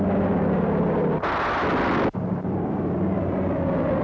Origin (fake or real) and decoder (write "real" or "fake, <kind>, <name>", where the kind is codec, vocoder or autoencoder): real